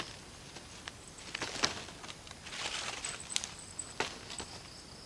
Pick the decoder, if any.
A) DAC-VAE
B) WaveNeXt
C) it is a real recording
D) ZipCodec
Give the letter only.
C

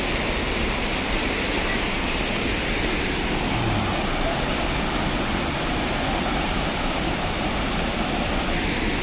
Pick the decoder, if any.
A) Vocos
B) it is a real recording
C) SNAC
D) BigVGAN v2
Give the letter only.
B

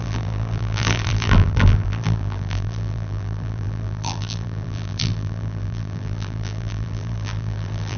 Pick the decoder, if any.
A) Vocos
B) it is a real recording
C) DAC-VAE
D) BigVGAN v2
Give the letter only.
D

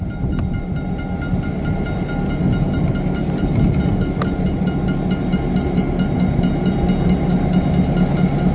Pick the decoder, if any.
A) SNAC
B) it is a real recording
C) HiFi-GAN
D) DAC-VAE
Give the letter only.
B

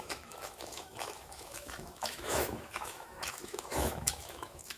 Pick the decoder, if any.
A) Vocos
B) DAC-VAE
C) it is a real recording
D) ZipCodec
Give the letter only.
B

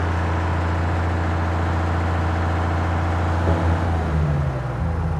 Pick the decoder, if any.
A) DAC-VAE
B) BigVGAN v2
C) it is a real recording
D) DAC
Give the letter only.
C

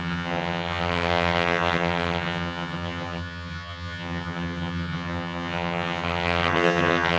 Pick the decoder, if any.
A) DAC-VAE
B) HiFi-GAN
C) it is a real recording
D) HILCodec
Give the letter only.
B